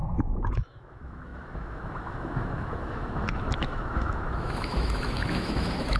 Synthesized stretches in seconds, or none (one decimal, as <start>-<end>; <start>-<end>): 0.0-6.0